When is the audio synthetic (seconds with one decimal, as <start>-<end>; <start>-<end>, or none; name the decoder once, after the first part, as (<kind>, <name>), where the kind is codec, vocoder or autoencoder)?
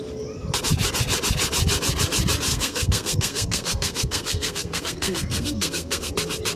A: 2.5-6.1 (codec, SNAC)